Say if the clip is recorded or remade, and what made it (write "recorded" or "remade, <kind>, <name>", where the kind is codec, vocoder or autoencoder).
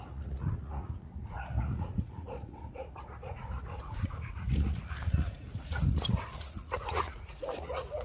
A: remade, vocoder, Vocos